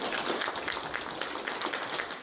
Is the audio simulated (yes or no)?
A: no